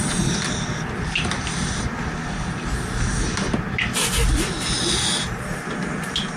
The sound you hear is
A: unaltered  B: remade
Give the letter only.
A